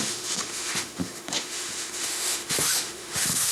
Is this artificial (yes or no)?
yes